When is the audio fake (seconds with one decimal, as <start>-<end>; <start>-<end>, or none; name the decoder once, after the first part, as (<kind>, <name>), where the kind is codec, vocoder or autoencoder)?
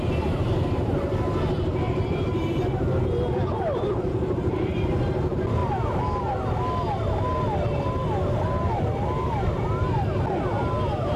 none